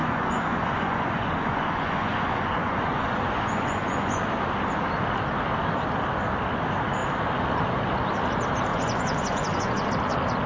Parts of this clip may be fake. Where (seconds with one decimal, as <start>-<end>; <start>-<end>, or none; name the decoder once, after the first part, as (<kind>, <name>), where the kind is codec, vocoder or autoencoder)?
0.0-4.2 (vocoder, Vocos); 8.7-9.9